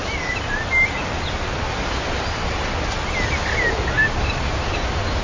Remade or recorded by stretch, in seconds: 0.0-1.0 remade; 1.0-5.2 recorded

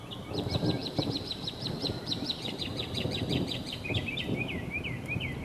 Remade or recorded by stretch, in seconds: 0.0-5.4 remade

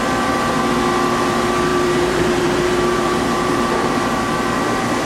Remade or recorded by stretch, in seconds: 0.0-1.7 recorded; 1.7-4.3 remade; 4.3-5.1 recorded

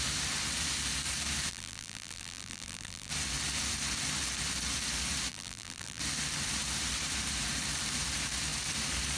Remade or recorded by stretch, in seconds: 0.0-1.5 recorded; 1.5-3.1 remade; 3.1-5.3 recorded; 5.3-6.0 remade; 6.0-9.2 recorded

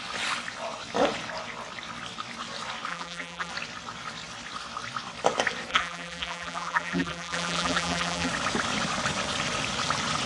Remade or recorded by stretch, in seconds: 0.0-2.9 recorded; 2.9-3.5 remade; 3.5-5.7 recorded; 5.7-8.3 remade; 8.3-10.3 recorded